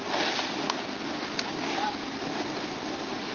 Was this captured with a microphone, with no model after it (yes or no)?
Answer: yes